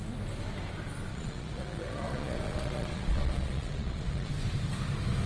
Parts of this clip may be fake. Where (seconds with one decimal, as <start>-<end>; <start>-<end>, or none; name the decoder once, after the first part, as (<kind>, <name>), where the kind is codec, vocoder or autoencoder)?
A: 1.1-4.3 (vocoder, Vocos)